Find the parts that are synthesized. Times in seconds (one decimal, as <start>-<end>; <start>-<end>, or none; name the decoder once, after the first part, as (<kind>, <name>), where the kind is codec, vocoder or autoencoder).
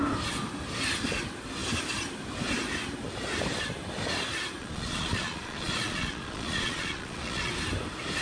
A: 4.6-7.5 (vocoder, Vocos)